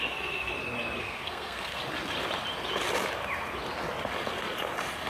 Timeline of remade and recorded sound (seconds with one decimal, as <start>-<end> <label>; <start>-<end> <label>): 0.0-0.5 remade; 0.5-1.0 recorded; 1.0-1.8 remade; 1.8-5.1 recorded